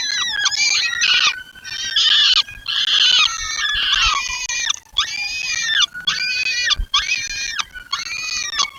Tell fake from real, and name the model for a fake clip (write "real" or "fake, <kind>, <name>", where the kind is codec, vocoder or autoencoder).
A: real